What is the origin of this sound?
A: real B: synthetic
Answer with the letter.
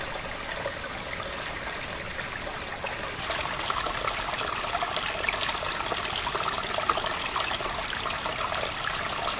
A